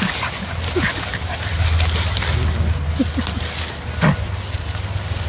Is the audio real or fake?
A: real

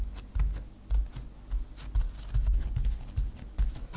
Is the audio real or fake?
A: real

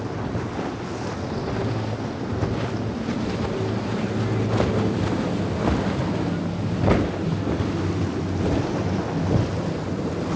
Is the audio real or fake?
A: real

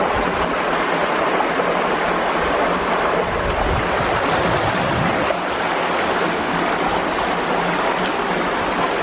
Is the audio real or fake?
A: real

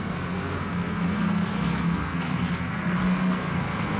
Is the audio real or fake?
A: fake